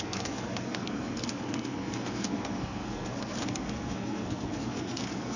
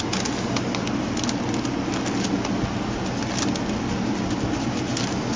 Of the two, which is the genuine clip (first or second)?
second